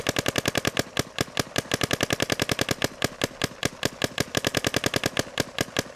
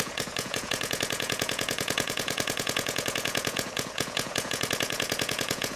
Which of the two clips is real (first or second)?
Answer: first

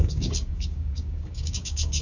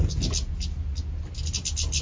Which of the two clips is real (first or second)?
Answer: second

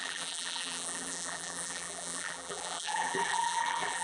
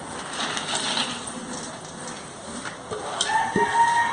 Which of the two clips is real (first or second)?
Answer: second